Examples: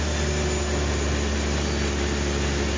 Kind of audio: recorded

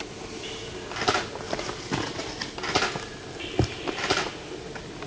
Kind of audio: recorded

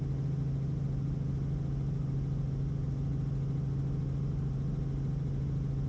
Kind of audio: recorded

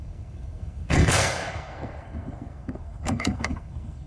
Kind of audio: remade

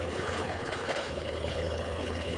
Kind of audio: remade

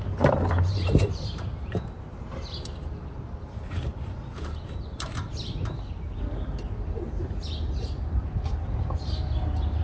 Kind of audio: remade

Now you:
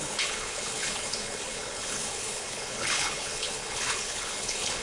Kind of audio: remade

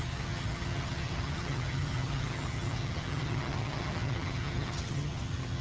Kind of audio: remade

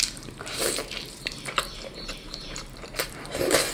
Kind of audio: remade